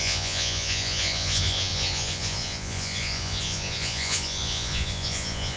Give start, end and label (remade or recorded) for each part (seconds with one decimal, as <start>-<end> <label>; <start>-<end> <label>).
0.0-5.6 remade